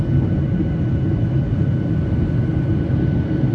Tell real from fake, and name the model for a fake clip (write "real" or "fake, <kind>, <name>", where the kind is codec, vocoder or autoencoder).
real